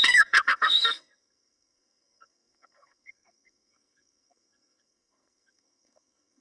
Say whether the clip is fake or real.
fake